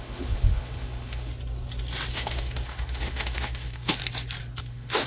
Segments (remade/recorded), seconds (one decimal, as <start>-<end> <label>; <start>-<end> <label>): 0.0-1.3 remade; 1.3-2.1 recorded; 2.1-4.0 remade; 4.0-4.6 recorded; 4.6-5.1 remade